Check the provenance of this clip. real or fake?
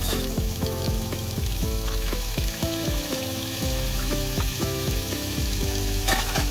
fake